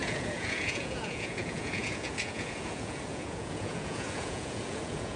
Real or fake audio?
fake